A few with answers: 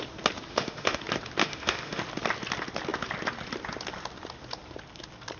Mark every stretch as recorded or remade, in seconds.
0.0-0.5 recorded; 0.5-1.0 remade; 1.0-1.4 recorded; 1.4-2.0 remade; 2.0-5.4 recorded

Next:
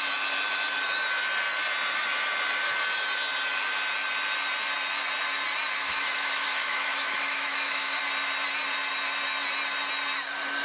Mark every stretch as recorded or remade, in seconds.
0.0-5.8 recorded; 5.8-8.0 remade; 8.0-10.6 recorded

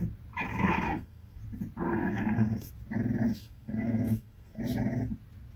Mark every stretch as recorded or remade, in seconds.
0.0-0.5 recorded; 0.5-1.4 remade; 1.4-1.9 recorded; 1.9-2.7 remade; 2.7-3.3 recorded; 3.3-4.6 remade; 4.6-5.6 recorded

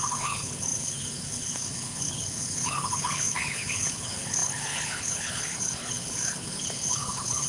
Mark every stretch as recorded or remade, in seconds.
0.0-7.5 remade

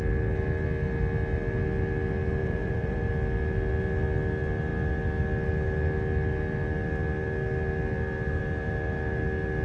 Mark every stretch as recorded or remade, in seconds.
0.0-2.4 recorded; 2.4-3.1 remade; 3.1-9.6 recorded